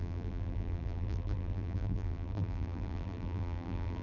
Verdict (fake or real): fake